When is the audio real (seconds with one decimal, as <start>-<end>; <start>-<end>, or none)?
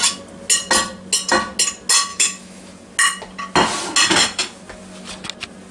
0.0-2.1; 2.7-5.7